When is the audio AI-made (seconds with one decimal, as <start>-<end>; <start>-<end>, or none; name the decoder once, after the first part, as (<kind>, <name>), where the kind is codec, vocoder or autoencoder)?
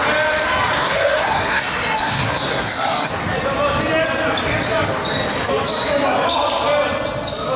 0.8-1.6 (codec, SNAC); 2.0-3.1